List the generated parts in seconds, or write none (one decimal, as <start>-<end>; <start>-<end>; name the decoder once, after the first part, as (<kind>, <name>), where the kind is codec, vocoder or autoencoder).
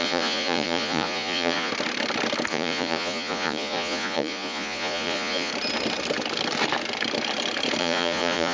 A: 0.0-1.7 (vocoder, Vocos); 2.5-5.5; 7.8-8.5